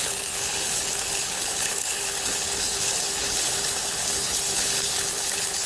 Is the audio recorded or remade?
remade